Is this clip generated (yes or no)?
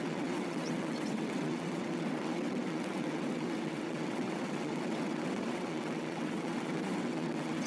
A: yes